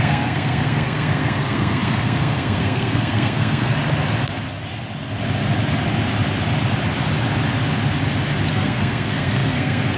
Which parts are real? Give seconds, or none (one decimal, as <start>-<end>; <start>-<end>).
3.7-8.5